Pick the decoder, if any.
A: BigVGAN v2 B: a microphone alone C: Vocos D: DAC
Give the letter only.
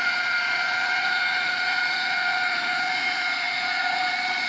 C